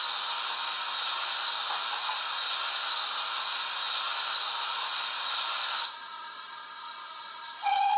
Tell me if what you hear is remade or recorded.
recorded